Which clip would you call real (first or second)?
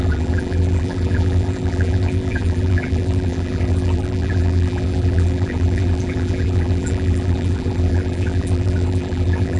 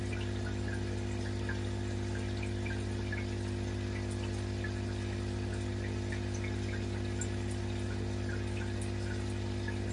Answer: second